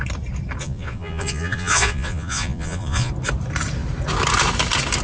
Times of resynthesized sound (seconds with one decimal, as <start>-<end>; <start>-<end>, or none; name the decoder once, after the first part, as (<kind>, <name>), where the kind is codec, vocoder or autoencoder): 0.6-3.1 (vocoder, Vocos)